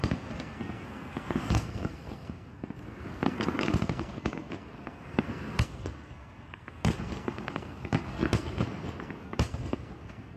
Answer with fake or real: fake